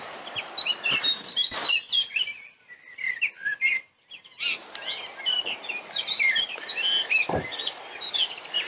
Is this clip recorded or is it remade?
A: remade